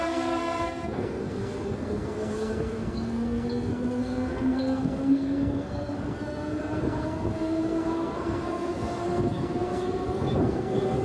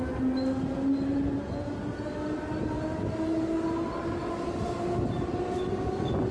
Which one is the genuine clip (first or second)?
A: second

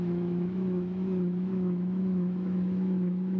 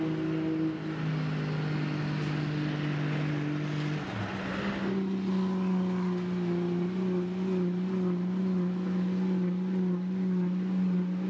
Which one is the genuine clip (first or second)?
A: second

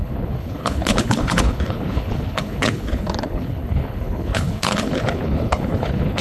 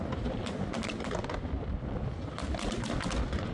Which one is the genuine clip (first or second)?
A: second